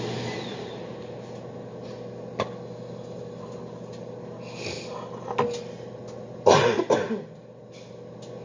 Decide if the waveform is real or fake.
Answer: real